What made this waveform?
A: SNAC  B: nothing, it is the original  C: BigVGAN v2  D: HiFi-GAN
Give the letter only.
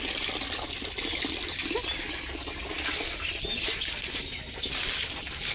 B